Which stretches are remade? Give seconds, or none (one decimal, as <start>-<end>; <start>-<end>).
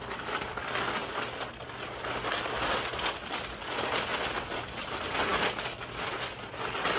none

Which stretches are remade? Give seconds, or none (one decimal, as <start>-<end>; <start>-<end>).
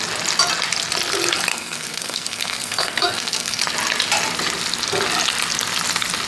1.5-3.6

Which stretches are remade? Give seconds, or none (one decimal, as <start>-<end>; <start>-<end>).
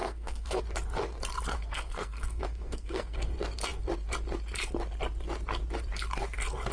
0.0-0.6; 1.5-3.3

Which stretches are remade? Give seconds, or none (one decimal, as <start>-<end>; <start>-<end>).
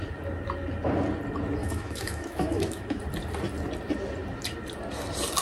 1.6-3.0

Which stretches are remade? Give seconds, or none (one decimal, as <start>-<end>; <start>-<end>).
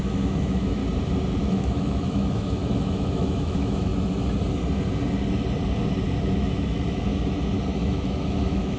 0.0-0.8; 1.4-3.9; 6.2-7.1; 7.8-8.8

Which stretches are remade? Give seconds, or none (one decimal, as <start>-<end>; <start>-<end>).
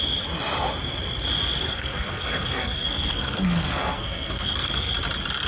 1.6-4.9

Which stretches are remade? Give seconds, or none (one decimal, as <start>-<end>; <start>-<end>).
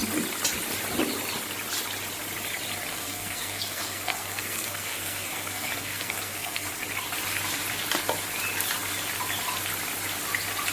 2.9-6.7